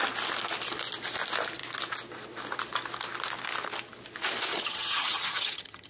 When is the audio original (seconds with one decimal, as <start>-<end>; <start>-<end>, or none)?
0.0-4.5